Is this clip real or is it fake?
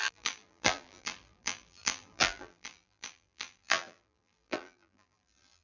fake